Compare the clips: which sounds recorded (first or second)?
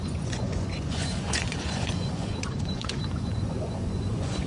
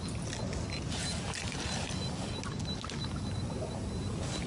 second